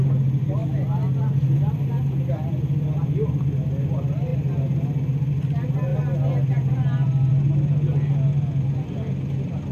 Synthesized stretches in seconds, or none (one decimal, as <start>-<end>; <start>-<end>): none